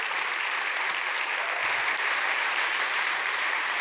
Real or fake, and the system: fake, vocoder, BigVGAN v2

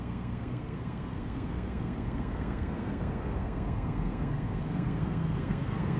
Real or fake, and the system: fake, codec, SNAC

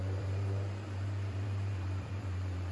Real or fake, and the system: fake, vocoder, BigVGAN v2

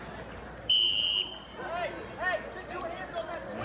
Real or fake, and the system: real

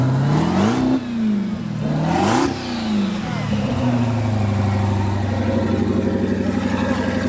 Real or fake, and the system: real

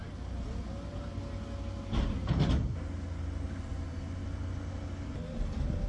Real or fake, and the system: real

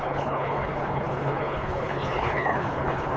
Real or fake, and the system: fake, codec, HILCodec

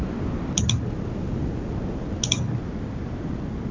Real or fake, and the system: real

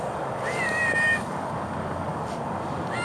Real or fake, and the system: fake, codec, DAC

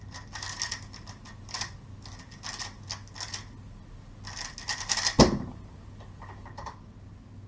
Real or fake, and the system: real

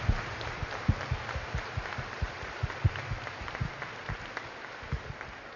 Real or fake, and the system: real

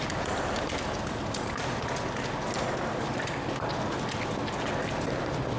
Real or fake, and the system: real